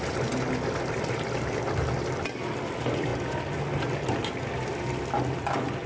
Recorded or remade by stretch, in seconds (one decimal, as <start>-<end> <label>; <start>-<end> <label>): 0.0-5.9 recorded